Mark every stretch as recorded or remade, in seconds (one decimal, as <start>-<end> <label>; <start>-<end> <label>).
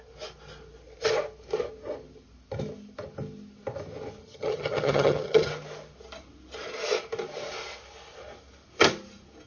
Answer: 0.0-4.2 recorded; 4.2-5.5 remade; 5.5-9.5 recorded